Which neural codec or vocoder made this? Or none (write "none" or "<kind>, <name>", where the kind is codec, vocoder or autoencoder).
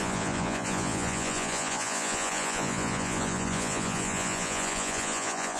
vocoder, Vocos